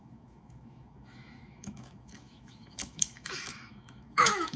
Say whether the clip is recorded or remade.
remade